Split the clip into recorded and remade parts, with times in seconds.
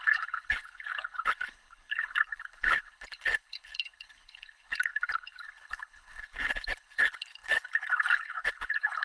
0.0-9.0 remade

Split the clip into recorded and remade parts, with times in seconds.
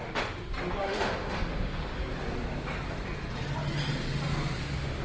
0.0-0.8 recorded; 0.8-1.8 remade; 1.8-4.6 recorded; 4.6-5.0 remade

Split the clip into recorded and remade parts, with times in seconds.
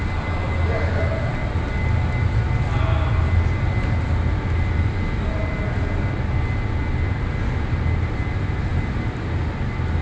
0.0-10.0 recorded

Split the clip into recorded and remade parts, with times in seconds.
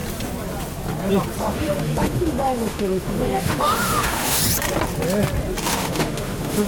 0.0-1.4 recorded; 1.4-4.4 remade; 4.4-5.6 recorded; 5.6-6.7 remade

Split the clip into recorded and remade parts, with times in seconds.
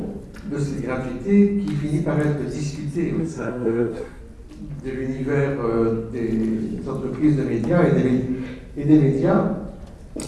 0.0-3.2 recorded; 3.2-4.2 remade; 4.2-10.3 recorded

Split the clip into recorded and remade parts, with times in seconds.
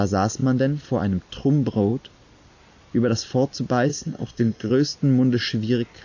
0.0-3.9 recorded; 3.9-4.7 remade; 4.7-6.0 recorded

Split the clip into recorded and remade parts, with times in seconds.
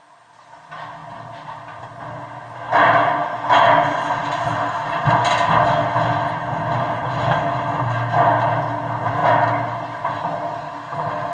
0.0-11.3 recorded